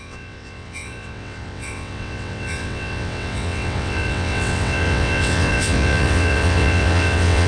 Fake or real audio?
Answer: fake